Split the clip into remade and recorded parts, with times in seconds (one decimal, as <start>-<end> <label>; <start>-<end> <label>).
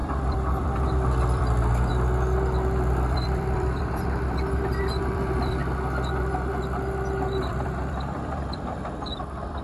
0.0-5.6 remade; 5.6-6.1 recorded; 6.1-6.5 remade; 6.5-7.5 recorded; 7.5-9.6 remade